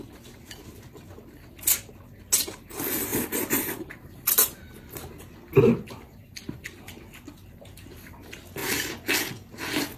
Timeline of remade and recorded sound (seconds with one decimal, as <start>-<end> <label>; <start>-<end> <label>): 0.0-3.1 recorded; 3.1-5.1 remade; 5.1-10.0 recorded